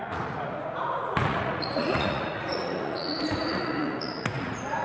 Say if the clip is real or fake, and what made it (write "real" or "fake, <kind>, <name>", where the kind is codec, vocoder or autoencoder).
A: fake, vocoder, Vocos